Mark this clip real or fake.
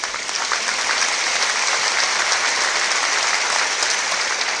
real